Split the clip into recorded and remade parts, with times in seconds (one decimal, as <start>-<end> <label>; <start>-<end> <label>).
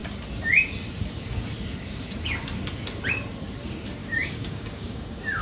0.0-4.0 recorded; 4.0-5.4 remade